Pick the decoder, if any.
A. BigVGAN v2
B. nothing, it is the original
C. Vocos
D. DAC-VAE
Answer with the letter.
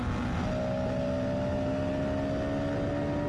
B